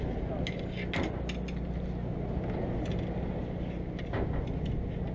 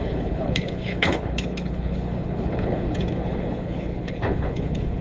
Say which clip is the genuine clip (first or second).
first